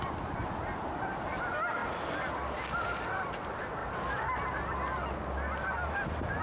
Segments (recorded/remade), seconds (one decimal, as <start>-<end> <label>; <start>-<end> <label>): 0.0-6.4 recorded